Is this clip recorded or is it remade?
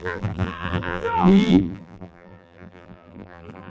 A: remade